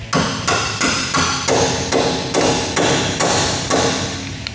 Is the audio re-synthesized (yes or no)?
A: no